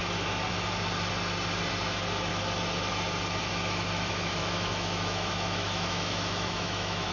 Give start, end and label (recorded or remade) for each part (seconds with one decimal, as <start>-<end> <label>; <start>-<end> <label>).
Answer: 0.0-3.4 recorded; 3.4-7.1 remade